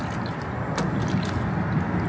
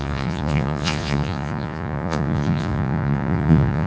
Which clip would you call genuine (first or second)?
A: first